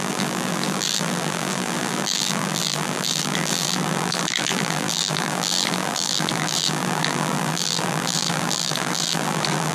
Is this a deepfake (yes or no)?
yes